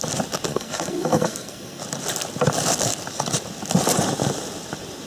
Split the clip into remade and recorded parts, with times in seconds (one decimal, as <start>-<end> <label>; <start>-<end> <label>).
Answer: 0.0-0.5 recorded; 0.5-1.8 remade; 1.8-5.1 recorded